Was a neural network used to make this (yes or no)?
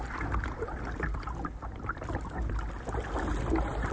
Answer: no